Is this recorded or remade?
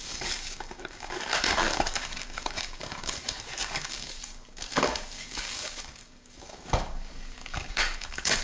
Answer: remade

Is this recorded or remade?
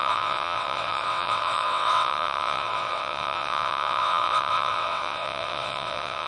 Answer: remade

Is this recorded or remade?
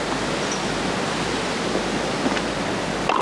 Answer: recorded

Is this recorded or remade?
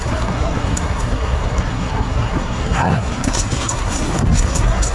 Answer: remade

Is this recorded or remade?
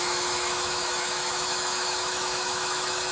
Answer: remade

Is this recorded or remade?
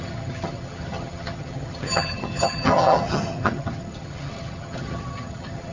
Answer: remade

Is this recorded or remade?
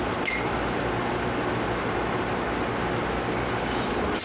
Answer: recorded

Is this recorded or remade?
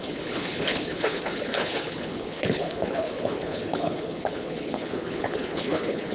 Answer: remade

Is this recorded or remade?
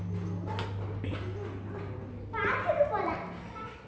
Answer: recorded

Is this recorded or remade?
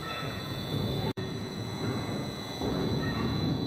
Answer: remade